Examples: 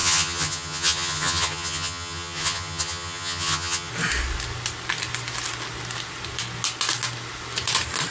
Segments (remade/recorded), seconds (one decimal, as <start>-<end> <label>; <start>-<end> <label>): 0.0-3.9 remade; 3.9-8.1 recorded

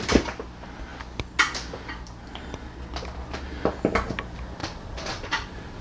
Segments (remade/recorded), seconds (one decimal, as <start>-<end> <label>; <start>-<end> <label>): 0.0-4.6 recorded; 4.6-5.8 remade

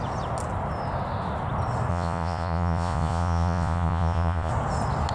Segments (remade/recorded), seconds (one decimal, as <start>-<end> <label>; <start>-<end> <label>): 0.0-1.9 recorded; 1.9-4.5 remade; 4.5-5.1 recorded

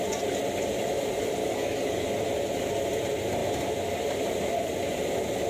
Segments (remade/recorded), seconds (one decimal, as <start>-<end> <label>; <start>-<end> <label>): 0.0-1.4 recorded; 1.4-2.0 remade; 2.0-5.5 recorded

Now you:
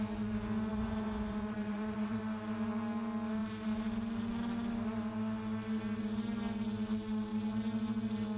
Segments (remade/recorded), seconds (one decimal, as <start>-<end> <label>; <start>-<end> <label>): 0.0-0.7 recorded; 0.7-2.2 remade; 2.2-8.4 recorded

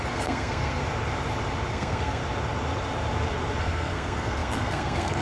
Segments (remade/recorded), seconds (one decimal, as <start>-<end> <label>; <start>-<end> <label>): 0.0-0.8 remade; 0.8-1.7 recorded; 1.7-2.2 remade; 2.2-3.6 recorded; 3.6-5.2 remade

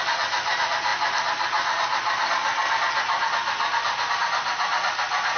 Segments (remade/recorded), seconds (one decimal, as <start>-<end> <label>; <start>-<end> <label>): 0.0-5.4 recorded

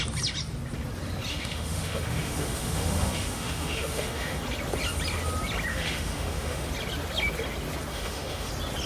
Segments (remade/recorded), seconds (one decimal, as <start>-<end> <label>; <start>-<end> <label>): 0.0-1.3 recorded; 1.3-4.4 remade; 4.4-5.7 recorded; 5.7-6.7 remade; 6.7-7.9 recorded; 7.9-8.5 remade; 8.5-8.9 recorded